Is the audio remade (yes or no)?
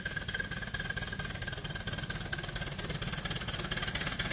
no